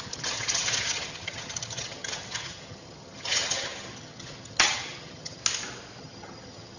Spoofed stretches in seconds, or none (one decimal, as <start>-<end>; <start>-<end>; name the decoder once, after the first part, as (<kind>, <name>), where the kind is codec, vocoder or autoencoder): 0.0-5.4 (vocoder, HiFi-GAN); 6.0-6.8